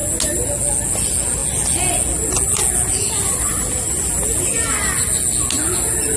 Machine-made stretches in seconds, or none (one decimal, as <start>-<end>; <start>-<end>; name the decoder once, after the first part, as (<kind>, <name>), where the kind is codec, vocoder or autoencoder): none

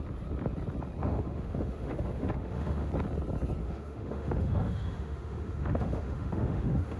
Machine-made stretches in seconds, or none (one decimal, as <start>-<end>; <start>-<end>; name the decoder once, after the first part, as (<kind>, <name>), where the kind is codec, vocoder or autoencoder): 1.0-2.9 (autoencoder, DAC-VAE); 3.6-7.0

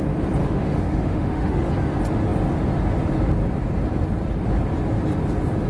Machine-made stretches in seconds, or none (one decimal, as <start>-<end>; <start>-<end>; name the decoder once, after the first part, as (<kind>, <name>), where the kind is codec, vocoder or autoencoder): 0.4-1.7 (autoencoder, DAC-VAE)

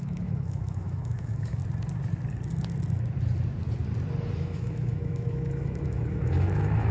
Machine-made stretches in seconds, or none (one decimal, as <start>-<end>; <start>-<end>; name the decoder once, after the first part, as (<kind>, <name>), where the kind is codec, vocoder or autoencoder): 0.0-1.6 (autoencoder, DAC-VAE); 4.4-6.9